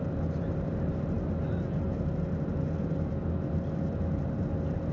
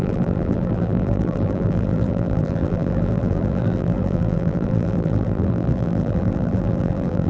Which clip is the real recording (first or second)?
first